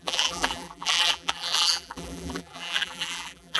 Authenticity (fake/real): fake